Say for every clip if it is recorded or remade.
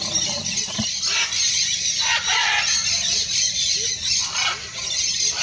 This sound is recorded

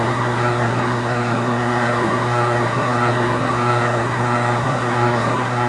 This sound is remade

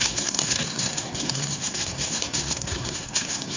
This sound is remade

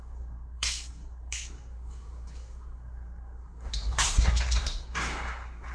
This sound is remade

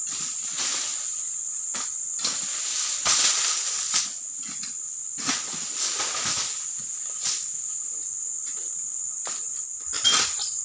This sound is recorded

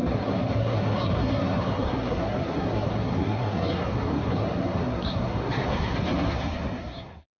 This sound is remade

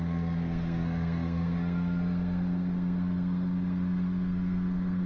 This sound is remade